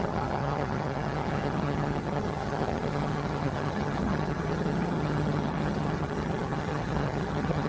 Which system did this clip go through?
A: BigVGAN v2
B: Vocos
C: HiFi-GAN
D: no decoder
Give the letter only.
C